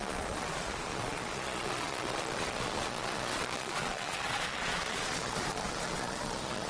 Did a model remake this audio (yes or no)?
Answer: yes